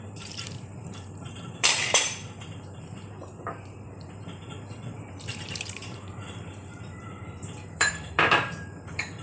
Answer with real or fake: fake